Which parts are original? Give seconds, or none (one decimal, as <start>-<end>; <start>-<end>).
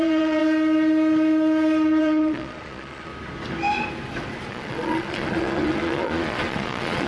0.4-2.0; 3.1-4.5